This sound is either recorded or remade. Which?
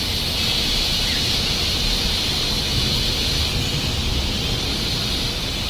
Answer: recorded